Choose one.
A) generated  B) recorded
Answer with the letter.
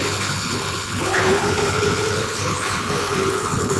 A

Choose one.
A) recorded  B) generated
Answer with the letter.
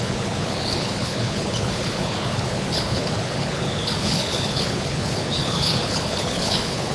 B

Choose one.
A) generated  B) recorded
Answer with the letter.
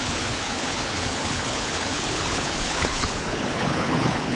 A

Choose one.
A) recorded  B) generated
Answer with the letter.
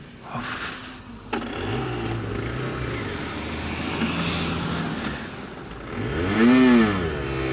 A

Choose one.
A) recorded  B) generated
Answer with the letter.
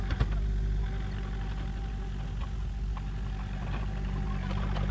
A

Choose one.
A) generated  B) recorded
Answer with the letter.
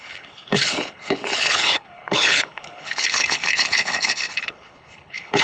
A